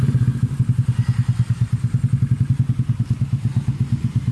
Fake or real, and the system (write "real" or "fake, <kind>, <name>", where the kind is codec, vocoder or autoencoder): real